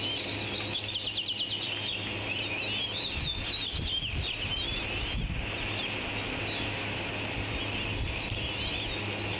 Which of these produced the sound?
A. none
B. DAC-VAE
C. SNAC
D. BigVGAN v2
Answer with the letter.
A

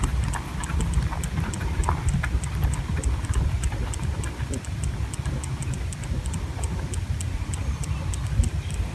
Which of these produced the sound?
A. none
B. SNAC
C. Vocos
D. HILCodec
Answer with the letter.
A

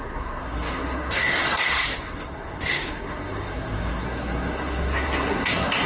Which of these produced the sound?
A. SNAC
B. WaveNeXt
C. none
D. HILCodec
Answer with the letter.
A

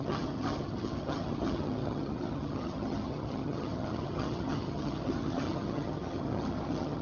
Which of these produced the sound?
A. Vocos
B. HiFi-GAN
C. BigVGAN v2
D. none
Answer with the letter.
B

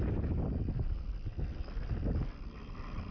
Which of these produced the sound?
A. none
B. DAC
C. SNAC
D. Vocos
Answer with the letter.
A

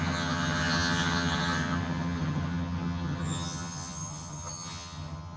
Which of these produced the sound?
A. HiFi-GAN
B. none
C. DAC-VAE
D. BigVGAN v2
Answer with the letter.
A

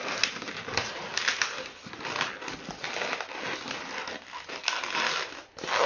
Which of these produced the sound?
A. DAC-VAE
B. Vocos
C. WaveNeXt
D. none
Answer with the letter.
D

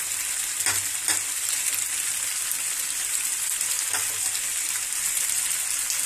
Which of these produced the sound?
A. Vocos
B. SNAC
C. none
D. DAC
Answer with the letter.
C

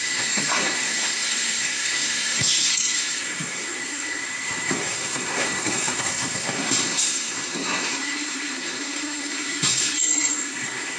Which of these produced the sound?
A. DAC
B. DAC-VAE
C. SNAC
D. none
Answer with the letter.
C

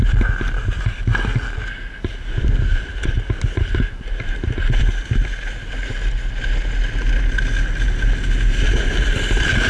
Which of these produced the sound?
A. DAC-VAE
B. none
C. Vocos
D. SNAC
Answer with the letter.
B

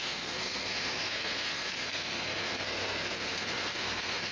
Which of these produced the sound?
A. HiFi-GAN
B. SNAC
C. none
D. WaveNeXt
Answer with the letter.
B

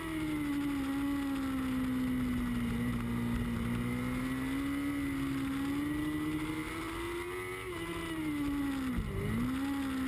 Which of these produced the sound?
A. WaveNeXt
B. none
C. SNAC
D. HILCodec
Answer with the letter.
B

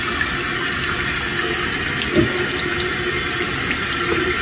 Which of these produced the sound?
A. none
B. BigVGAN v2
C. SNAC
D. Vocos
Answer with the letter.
A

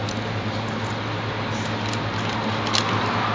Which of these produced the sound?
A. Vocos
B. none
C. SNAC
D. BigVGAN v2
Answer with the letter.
B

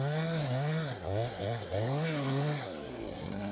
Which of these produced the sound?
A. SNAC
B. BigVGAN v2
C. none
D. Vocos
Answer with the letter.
A